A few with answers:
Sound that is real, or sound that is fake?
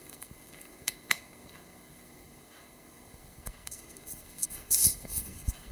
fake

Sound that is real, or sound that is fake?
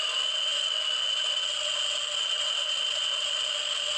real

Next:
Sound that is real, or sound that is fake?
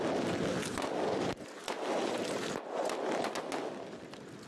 real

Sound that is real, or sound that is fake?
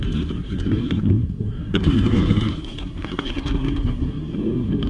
fake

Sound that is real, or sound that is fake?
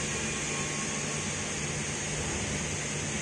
real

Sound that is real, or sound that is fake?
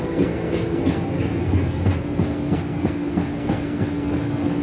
fake